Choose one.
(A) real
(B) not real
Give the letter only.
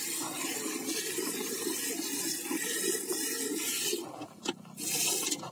A